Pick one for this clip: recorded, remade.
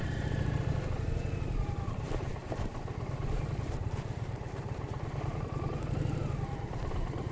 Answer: remade